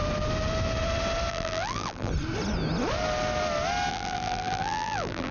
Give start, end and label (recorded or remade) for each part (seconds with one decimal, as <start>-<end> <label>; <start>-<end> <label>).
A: 0.0-1.3 recorded; 1.3-2.1 remade; 2.1-3.9 recorded; 3.9-5.3 remade